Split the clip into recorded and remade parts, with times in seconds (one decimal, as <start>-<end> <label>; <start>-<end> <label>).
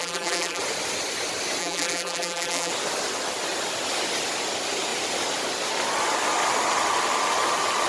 0.0-0.6 remade; 0.6-1.6 recorded; 1.6-2.7 remade; 2.7-7.9 recorded